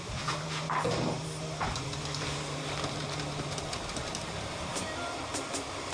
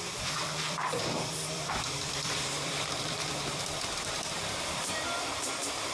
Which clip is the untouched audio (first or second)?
first